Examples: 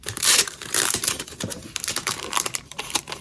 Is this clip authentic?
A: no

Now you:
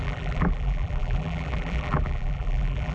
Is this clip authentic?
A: no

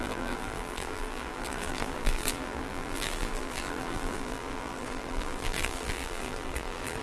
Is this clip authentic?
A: no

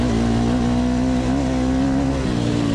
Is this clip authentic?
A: yes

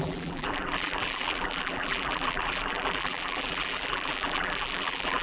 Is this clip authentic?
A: no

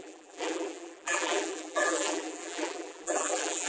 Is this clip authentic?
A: no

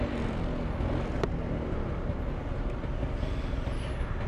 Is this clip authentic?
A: yes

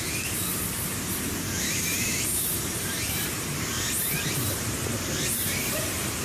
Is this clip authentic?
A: no